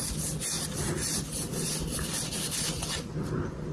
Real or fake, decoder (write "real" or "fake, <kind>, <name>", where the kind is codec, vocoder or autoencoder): real